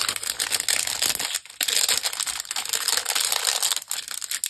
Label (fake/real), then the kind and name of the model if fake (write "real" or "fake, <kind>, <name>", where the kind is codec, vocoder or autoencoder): real